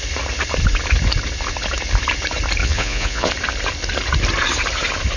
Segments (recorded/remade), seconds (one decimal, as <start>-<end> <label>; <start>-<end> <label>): 0.0-2.6 recorded; 2.6-3.3 remade; 3.3-5.2 recorded